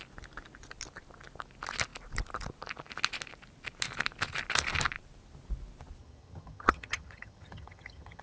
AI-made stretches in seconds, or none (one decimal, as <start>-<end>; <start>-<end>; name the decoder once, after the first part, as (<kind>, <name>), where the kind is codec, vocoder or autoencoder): 6.0-8.2 (vocoder, HiFi-GAN)